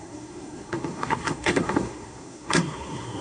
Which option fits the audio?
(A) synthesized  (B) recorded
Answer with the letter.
A